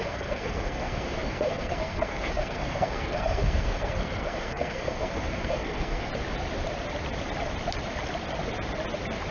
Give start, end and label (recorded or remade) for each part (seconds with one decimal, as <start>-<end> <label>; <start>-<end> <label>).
0.0-6.1 remade; 6.1-9.3 recorded